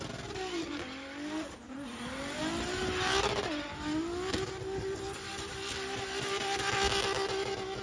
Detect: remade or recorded recorded